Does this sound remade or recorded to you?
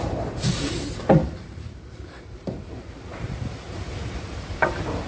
remade